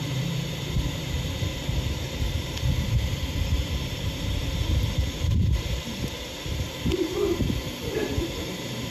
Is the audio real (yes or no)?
no